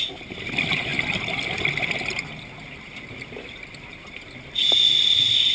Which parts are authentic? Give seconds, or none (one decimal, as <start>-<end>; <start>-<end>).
0.0-5.5